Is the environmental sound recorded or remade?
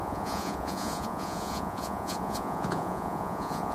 remade